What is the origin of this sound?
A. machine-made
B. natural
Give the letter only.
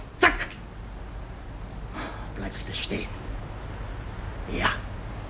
B